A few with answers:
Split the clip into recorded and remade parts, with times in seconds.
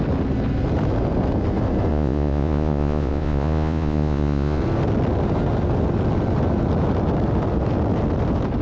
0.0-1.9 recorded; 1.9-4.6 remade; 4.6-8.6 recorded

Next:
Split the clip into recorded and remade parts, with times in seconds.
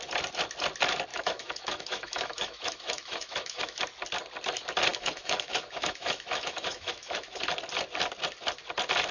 0.0-1.1 recorded; 1.1-3.8 remade; 3.8-4.9 recorded; 4.9-7.4 remade; 7.4-9.1 recorded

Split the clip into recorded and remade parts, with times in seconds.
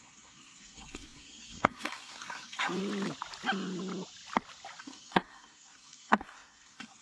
0.0-2.8 remade; 2.8-4.8 recorded; 4.8-7.0 remade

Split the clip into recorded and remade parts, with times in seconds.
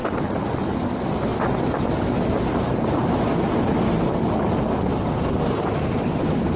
0.0-6.6 recorded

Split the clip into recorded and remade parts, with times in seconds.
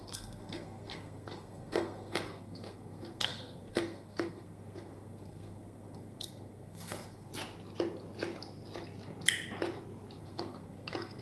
0.0-7.3 remade; 7.3-10.2 recorded; 10.2-11.2 remade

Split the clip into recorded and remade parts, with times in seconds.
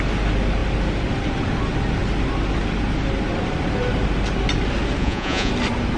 0.0-5.0 recorded; 5.0-5.5 remade; 5.5-6.0 recorded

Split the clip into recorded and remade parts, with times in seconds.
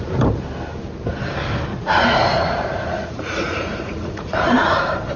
0.0-1.7 recorded; 1.7-4.8 remade; 4.8-5.2 recorded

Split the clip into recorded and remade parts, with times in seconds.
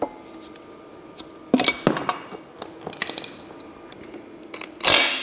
0.0-5.2 recorded